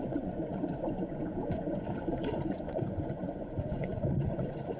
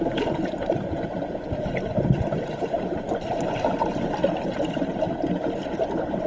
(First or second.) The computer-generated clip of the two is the first